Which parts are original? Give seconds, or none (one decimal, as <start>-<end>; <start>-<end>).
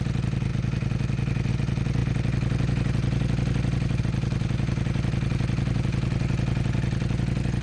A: 0.0-7.6